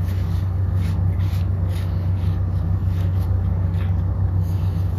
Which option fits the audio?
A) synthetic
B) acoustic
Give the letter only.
A